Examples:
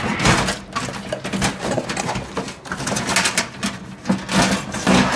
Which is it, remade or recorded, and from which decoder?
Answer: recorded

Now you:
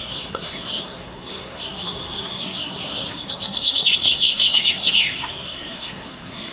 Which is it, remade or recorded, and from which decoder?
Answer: remade, codec, SNAC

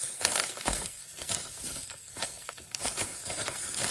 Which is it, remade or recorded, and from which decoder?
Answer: remade, codec, SNAC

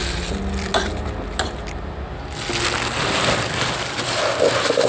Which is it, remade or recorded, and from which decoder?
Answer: recorded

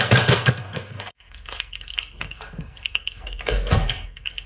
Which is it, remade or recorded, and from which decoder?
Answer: remade, codec, SNAC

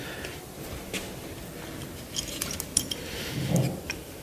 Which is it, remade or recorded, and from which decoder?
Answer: recorded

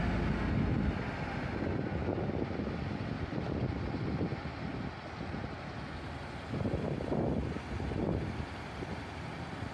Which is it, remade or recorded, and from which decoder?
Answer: recorded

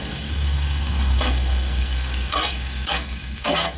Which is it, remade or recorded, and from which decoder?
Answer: remade, codec, SNAC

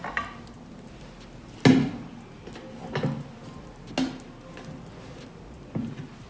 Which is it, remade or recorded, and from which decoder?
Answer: recorded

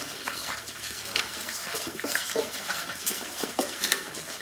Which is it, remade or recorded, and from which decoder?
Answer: remade, codec, SNAC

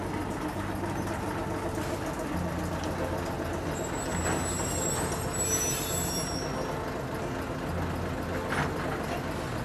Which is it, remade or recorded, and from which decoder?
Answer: recorded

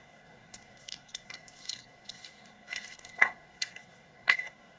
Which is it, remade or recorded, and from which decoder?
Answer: remade, codec, SNAC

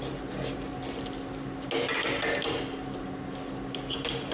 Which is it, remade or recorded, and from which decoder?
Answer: recorded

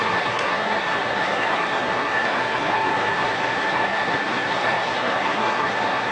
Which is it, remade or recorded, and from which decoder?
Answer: remade, codec, SNAC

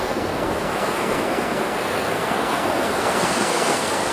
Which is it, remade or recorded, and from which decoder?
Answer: remade, codec, SNAC